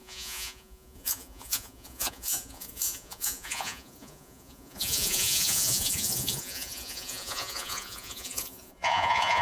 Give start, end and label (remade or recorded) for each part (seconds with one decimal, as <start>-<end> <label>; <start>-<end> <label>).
0.0-9.4 remade